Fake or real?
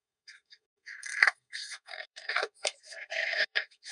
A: fake